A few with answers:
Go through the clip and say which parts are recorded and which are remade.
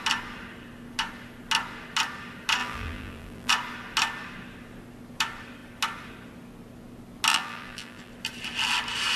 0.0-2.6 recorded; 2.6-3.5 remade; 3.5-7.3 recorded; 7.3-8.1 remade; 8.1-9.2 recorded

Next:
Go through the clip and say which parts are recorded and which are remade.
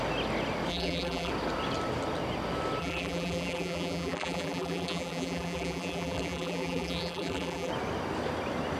0.0-0.7 recorded; 0.7-1.3 remade; 1.3-2.8 recorded; 2.8-7.7 remade; 7.7-8.8 recorded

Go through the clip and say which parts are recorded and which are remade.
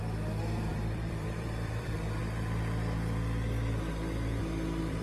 0.0-0.7 recorded; 0.7-2.2 remade; 2.2-4.4 recorded; 4.4-5.0 remade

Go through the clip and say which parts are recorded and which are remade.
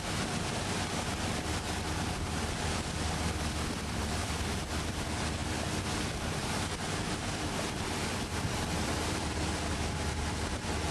0.0-5.4 remade; 5.4-6.0 recorded; 6.0-10.9 remade